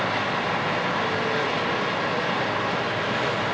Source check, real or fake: real